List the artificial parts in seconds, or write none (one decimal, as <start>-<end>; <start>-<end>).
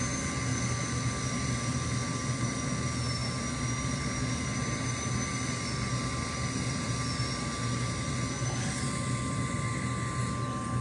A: 0.5-1.1; 1.7-2.4